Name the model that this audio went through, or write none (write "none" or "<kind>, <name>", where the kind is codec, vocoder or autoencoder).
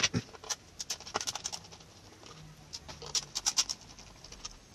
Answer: none